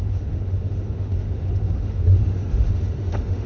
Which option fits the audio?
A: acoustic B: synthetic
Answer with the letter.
B